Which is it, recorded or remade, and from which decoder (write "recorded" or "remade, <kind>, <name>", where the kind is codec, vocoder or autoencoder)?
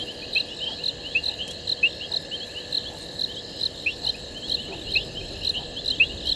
recorded